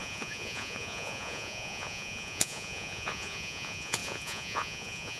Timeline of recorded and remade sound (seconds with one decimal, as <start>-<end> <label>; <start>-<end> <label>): 0.0-5.2 remade